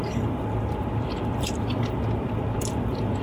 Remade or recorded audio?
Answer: remade